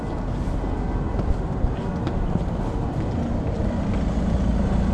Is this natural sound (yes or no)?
yes